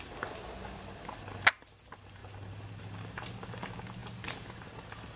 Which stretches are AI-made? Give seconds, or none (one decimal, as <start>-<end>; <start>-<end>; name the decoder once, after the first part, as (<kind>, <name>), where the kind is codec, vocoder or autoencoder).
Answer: none